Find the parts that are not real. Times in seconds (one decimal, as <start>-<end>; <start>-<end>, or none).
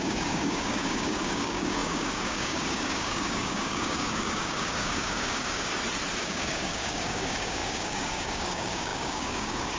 0.0-5.7; 6.2-9.8